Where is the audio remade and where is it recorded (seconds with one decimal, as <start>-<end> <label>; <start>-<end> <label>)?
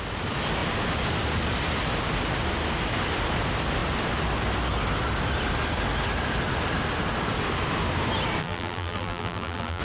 0.0-8.4 recorded; 8.4-9.8 remade